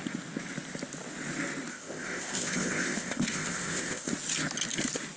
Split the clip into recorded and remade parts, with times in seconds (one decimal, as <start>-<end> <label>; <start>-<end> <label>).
0.0-1.7 recorded; 1.7-4.1 remade; 4.1-5.2 recorded